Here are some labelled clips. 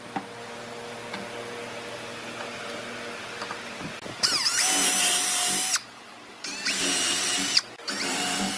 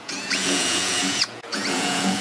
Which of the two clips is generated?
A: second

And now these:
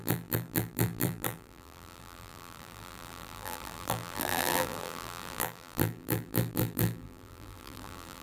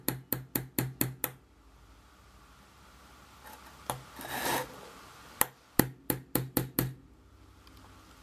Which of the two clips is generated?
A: first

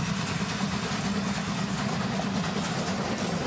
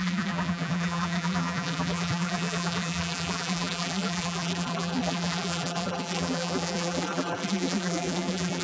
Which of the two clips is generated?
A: second